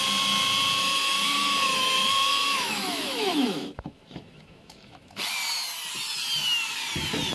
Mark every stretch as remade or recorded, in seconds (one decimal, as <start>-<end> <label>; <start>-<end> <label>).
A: 0.0-0.8 recorded; 0.8-5.2 remade; 5.2-7.3 recorded

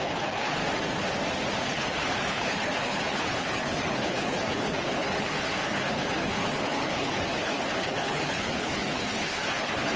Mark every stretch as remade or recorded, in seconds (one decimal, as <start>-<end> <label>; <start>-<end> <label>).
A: 0.0-0.6 remade; 0.6-1.6 recorded; 1.6-10.0 remade